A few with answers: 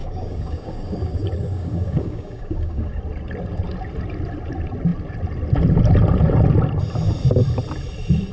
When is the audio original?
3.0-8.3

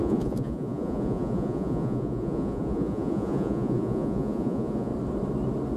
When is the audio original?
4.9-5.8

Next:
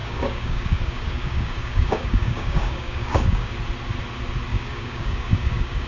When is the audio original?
3.5-4.5

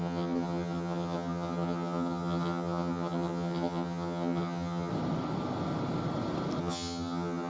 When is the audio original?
4.9-6.6

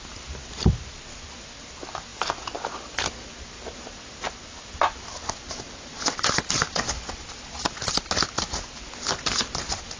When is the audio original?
0.0-10.0